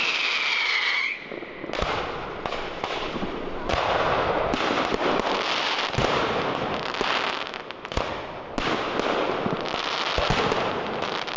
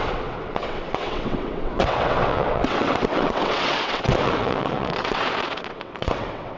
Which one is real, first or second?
first